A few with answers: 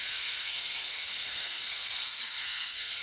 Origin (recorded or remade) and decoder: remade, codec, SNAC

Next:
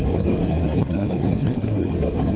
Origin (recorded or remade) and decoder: remade, codec, SNAC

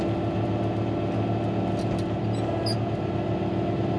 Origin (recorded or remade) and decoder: recorded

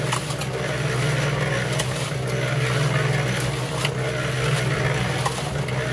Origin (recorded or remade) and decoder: recorded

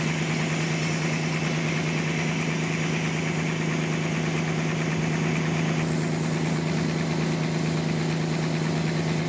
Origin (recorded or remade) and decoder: recorded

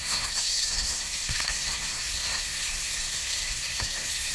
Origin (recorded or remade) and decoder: remade, codec, SNAC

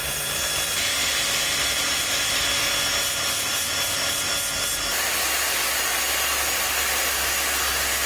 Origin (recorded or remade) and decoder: recorded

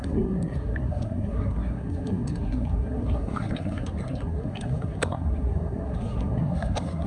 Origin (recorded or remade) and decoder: remade, codec, SNAC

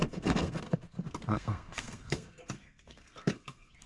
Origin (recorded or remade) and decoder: remade, codec, SNAC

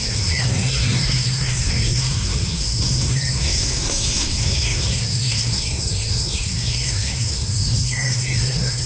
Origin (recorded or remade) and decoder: remade, codec, SNAC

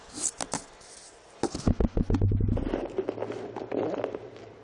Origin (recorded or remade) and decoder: recorded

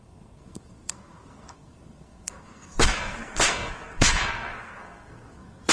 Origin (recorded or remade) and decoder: remade, codec, SNAC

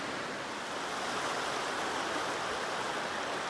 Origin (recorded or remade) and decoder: recorded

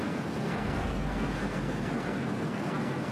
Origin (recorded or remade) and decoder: remade, codec, SNAC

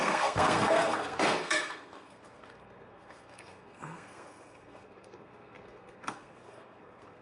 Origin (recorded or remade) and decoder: remade, codec, SNAC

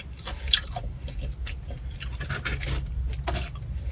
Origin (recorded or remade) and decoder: recorded